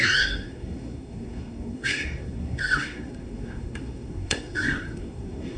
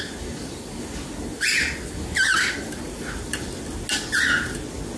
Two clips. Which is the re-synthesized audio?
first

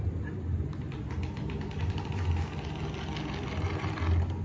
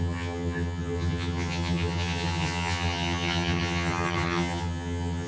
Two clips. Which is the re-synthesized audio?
second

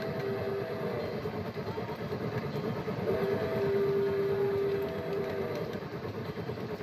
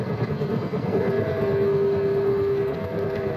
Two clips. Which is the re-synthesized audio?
second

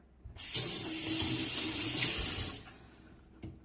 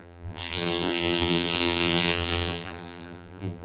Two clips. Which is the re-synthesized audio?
second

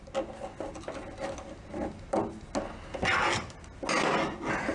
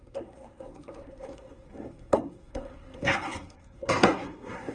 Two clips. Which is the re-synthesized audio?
second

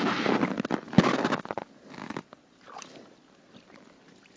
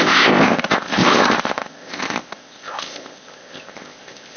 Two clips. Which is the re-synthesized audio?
second